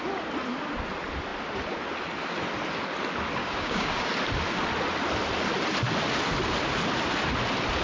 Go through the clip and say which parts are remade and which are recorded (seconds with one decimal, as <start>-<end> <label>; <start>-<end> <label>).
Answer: 0.0-3.4 recorded; 3.4-4.1 remade; 4.1-7.8 recorded

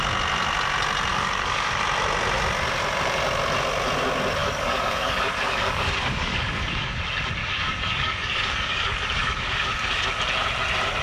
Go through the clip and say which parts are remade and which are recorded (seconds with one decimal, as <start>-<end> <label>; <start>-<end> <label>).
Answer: 0.0-1.1 recorded; 1.1-1.8 remade; 1.8-4.4 recorded; 4.4-7.0 remade; 7.0-7.4 recorded; 7.4-10.0 remade; 10.0-11.0 recorded

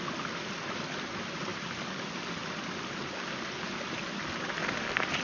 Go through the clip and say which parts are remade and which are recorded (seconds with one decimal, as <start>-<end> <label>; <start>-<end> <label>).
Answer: 0.0-5.2 recorded

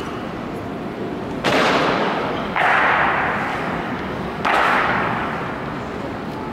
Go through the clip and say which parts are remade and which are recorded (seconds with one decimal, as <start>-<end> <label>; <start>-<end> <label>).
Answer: 0.0-2.0 recorded; 2.0-2.7 remade; 2.7-3.5 recorded; 3.5-5.3 remade; 5.3-6.5 recorded

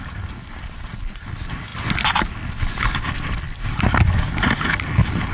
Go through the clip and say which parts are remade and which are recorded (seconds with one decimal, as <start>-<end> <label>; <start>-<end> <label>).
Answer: 0.0-5.3 recorded

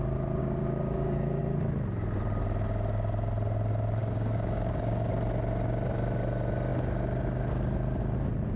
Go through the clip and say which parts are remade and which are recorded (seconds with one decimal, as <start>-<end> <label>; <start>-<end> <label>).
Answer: 0.0-0.4 recorded; 0.4-1.4 remade; 1.4-4.0 recorded; 4.0-5.1 remade; 5.1-8.6 recorded

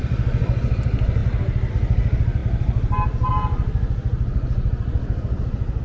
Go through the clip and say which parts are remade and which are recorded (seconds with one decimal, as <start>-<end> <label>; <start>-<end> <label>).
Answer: 0.0-5.8 recorded